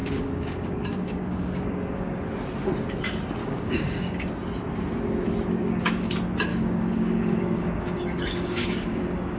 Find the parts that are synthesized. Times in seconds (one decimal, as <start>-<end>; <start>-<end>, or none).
0.0-2.1; 3.4-4.3; 5.6-6.1; 6.5-9.4